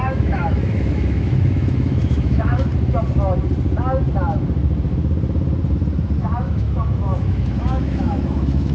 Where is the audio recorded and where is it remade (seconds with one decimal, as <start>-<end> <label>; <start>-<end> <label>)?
0.0-2.7 remade; 2.7-6.4 recorded; 6.4-8.7 remade